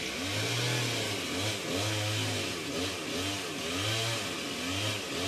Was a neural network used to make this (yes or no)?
no